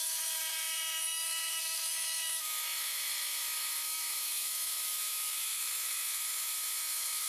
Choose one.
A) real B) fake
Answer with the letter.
B